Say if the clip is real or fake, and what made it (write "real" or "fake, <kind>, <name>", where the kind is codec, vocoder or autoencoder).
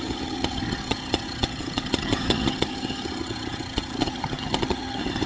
fake, vocoder, HiFi-GAN